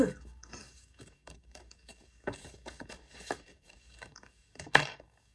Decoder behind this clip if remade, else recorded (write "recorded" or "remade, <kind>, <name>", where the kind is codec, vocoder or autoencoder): remade, codec, DAC